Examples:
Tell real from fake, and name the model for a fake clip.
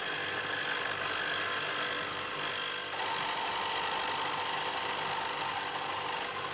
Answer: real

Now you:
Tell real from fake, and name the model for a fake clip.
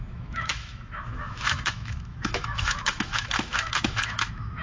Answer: fake, autoencoder, DAC-VAE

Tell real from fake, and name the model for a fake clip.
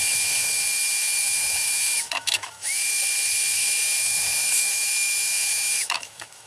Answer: fake, autoencoder, DAC-VAE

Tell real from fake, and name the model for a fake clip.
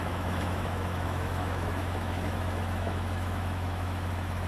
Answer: fake, autoencoder, DAC-VAE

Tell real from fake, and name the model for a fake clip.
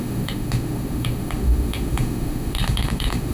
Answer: fake, autoencoder, DAC-VAE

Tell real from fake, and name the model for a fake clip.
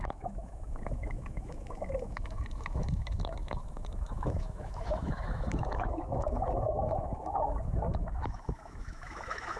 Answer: fake, autoencoder, DAC-VAE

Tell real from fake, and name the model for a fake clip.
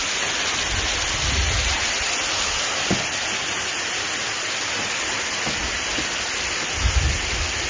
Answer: real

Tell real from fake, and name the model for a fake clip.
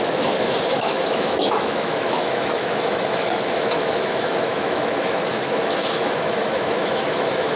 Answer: fake, autoencoder, DAC-VAE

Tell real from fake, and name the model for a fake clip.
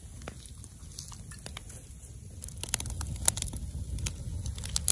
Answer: real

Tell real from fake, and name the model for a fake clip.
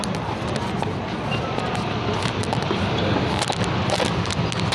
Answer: real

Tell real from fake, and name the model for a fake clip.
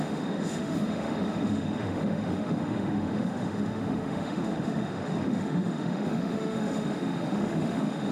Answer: fake, autoencoder, DAC-VAE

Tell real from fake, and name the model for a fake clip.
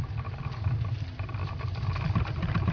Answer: real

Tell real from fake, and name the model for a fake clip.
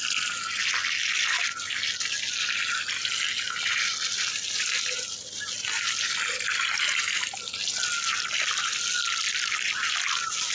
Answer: real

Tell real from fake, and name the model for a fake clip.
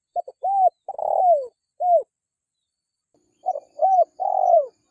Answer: real